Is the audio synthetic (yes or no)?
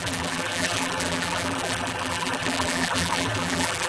yes